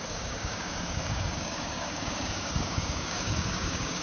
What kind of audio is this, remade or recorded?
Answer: remade